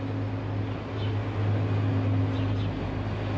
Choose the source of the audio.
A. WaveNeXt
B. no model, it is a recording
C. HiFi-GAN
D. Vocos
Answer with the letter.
B